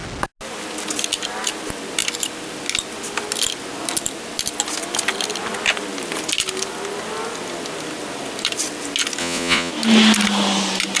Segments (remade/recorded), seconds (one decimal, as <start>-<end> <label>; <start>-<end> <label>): 0.0-9.2 recorded; 9.2-9.7 remade; 9.7-11.0 recorded